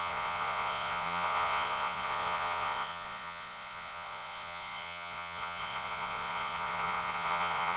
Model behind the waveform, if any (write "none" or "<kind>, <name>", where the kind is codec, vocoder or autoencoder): vocoder, Vocos